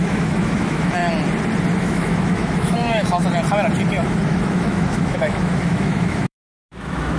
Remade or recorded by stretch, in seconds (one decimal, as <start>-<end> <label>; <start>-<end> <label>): 0.0-1.0 remade; 1.0-1.8 recorded; 1.8-3.2 remade; 3.2-3.9 recorded; 3.9-7.2 remade